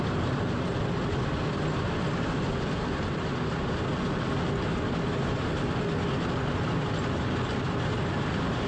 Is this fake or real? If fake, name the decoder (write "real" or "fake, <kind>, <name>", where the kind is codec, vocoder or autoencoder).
real